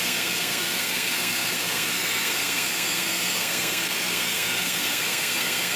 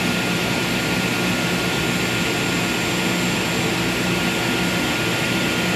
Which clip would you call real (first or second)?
second